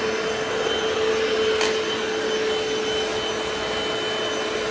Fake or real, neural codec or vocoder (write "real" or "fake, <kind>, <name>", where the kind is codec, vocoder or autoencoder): real